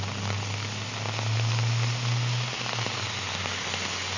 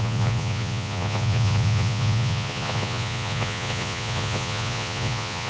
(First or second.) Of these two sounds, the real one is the first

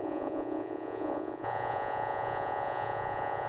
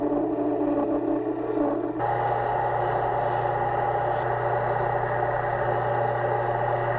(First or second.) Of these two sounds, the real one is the second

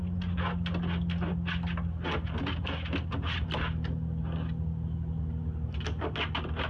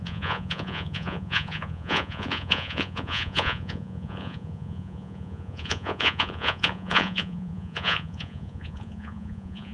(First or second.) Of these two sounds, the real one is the first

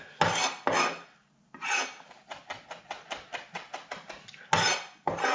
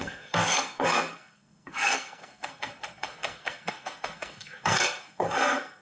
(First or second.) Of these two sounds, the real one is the first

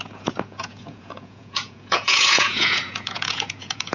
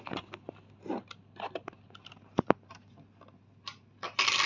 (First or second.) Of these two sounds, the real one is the second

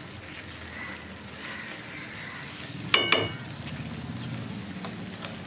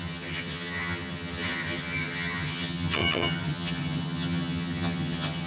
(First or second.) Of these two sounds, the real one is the first